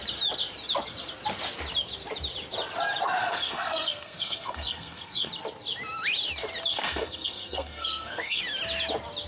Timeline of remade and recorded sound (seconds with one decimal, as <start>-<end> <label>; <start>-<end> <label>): 0.0-3.2 recorded; 3.2-5.3 remade; 5.3-6.7 recorded; 6.7-8.4 remade; 8.4-9.3 recorded